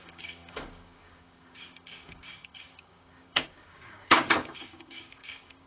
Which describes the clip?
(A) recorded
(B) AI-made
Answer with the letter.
B